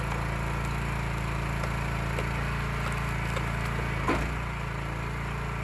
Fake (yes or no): no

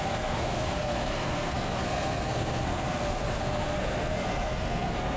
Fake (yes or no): yes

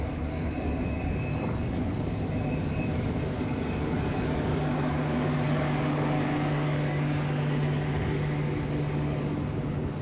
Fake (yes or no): yes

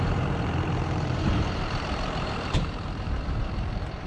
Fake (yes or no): yes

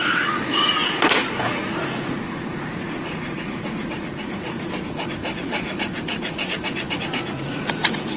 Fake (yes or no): yes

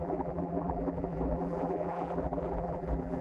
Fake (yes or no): yes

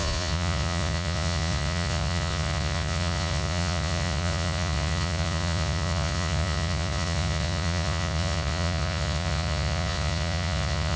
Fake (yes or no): yes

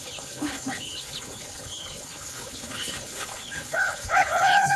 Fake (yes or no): yes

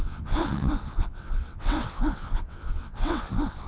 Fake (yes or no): yes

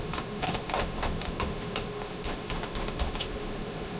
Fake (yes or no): yes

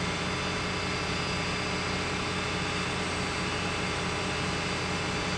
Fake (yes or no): no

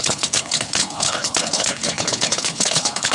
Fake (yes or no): yes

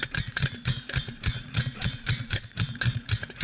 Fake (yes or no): yes